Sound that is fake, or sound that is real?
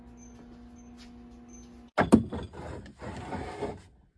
real